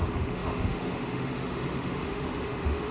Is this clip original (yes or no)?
no